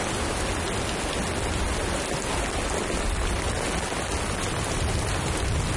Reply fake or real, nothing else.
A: real